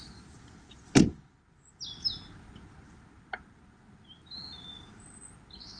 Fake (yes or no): no